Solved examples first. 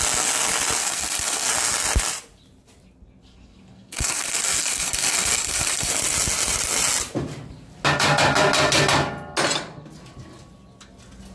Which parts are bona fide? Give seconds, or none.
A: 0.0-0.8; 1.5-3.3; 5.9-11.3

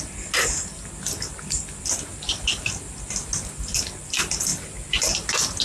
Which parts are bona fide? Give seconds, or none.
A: 0.0-5.6

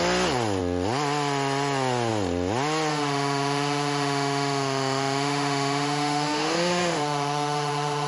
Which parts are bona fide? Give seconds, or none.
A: 0.0-2.9

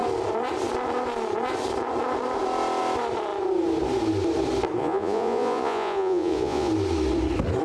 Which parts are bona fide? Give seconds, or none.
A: 0.0-4.8; 6.7-7.6

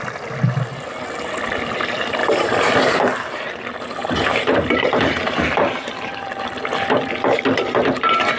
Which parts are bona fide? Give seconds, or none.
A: 0.0-2.2; 3.0-4.0; 6.3-8.4

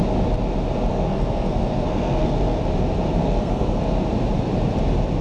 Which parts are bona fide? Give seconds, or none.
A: 0.0-0.9; 2.6-3.2; 3.8-5.2

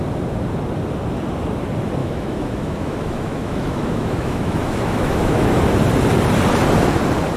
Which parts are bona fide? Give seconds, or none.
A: 0.0-2.0; 5.6-7.4

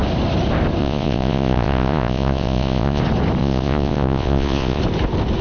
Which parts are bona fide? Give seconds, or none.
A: 0.0-0.8; 3.0-3.4; 4.8-5.4